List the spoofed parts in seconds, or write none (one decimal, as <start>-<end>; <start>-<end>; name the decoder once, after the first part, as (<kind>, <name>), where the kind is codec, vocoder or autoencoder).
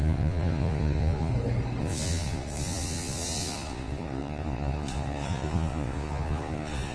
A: 0.0-1.3 (vocoder, Vocos); 1.8-6.9